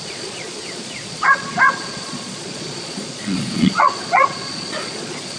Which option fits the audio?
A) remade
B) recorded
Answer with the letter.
A